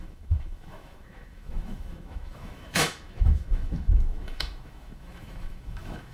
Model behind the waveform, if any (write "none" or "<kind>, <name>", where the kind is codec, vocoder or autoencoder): autoencoder, DAC-VAE